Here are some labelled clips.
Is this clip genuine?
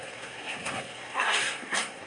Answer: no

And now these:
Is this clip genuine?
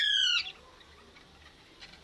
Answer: yes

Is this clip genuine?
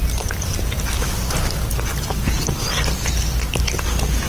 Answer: yes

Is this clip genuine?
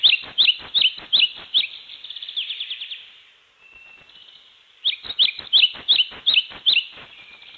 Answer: yes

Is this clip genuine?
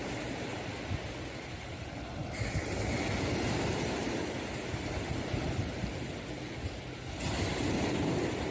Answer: yes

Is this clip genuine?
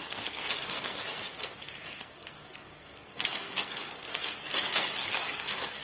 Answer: no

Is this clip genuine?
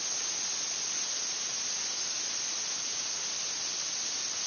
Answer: yes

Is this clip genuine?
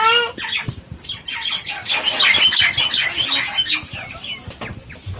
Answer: yes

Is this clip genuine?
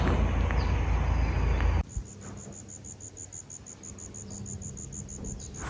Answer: yes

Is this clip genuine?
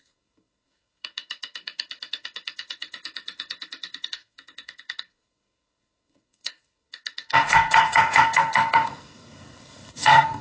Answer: no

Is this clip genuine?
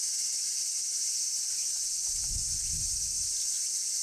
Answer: yes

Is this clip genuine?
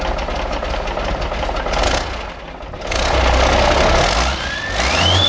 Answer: yes